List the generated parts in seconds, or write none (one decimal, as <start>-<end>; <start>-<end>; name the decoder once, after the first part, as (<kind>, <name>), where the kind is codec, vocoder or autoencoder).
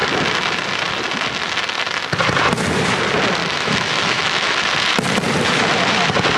3.4-4.6 (autoencoder, DAC-VAE)